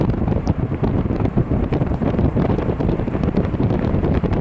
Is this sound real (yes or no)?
no